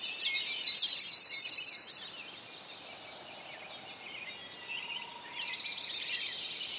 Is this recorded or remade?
recorded